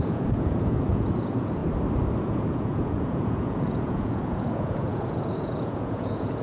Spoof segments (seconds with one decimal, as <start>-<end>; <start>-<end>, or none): 0.0-1.6; 2.2-6.4